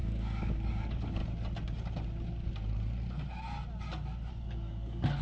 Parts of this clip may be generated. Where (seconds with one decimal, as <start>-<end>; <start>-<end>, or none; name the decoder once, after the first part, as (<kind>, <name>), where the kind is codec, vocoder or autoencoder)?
0.0-1.2 (codec, DAC); 4.3-5.2